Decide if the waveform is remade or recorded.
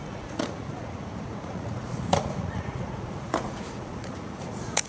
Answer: remade